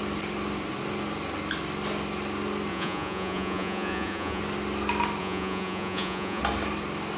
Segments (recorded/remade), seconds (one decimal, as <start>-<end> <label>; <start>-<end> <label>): 0.0-2.7 recorded; 2.7-4.4 remade; 4.4-5.2 recorded; 5.2-6.4 remade; 6.4-7.2 recorded